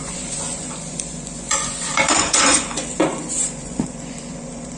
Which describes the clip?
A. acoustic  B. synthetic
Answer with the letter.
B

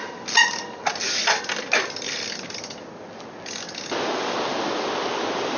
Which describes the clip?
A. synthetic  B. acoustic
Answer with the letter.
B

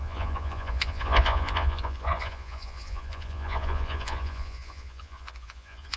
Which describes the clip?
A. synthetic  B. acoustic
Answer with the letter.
A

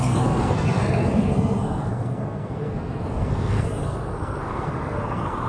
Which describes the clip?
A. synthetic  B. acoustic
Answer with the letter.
A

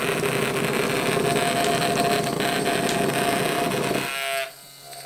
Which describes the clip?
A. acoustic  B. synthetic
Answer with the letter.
A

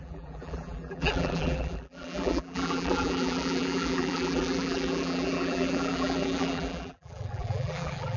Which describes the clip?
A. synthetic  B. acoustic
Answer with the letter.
A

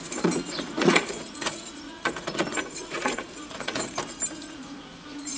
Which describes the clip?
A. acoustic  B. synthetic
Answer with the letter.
B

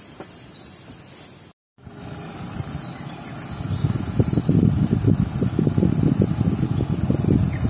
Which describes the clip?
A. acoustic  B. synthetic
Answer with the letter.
A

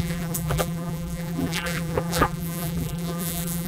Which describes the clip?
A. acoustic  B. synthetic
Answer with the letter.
B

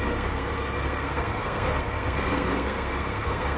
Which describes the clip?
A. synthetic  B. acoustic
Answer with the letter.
A